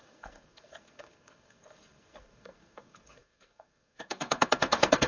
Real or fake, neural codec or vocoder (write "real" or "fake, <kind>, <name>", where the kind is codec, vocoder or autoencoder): fake, codec, SNAC